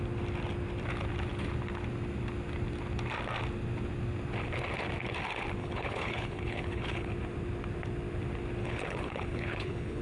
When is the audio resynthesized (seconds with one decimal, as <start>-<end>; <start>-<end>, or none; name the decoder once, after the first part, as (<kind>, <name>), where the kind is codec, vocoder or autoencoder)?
5.6-7.1 (codec, HILCodec); 8.6-10.0